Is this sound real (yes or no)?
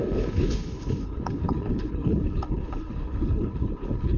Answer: no